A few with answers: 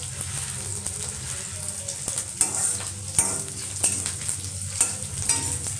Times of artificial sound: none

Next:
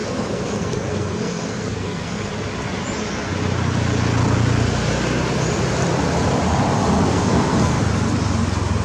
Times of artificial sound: 0.0-2.3; 7.1-7.8

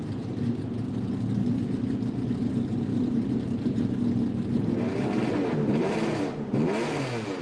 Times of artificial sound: 2.9-3.9; 5.6-6.3

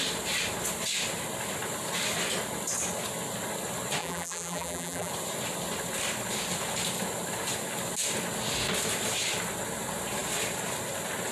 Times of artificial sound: 4.0-5.1

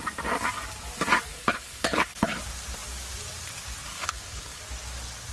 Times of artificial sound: 1.3-2.4; 3.9-4.6

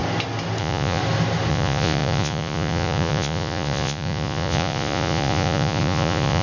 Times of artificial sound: 0.6-1.0; 1.5-6.4